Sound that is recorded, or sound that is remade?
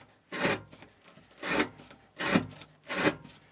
recorded